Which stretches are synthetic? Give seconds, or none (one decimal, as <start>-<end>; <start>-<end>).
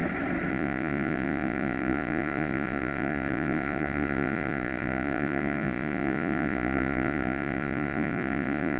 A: 0.5-8.8